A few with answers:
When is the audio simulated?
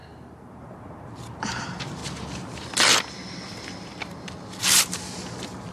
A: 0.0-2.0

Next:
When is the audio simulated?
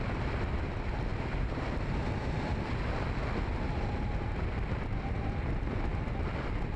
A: none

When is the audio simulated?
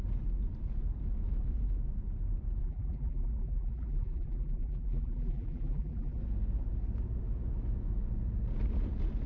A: 2.6-6.2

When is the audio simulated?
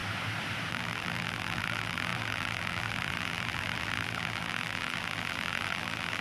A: 0.7-6.2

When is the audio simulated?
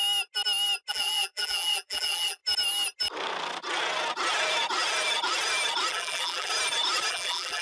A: 0.9-2.4; 5.9-6.5; 7.1-7.6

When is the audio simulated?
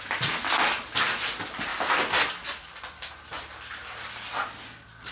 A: none